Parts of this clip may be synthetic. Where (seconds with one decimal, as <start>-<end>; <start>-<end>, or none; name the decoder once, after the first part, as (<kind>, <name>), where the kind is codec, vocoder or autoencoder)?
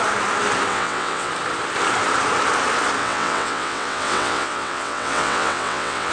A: 0.7-1.3 (vocoder, WaveNeXt); 3.0-6.1